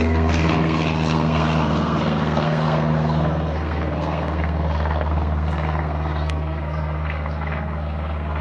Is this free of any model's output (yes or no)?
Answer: no